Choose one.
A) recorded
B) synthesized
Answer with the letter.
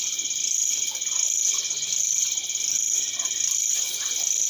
A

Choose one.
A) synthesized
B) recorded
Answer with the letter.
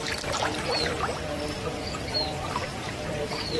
B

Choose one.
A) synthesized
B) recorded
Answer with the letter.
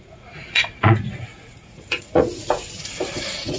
A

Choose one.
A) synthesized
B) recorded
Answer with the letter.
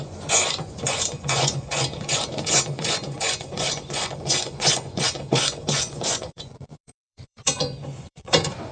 A